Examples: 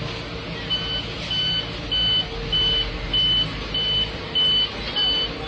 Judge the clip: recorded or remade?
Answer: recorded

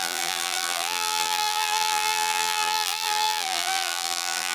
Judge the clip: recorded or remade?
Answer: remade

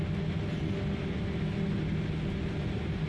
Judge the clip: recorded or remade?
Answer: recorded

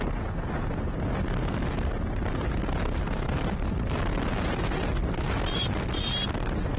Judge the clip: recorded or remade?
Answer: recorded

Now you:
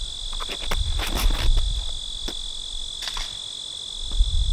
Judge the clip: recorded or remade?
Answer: recorded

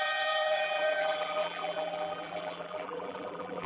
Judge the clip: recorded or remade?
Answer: remade